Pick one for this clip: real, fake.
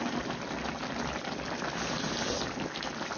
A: real